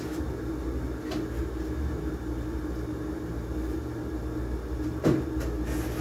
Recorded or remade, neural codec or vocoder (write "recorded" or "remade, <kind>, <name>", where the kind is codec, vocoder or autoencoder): recorded